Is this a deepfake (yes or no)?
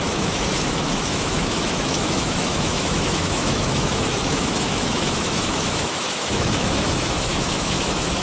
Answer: yes